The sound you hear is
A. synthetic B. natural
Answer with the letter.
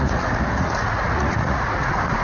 A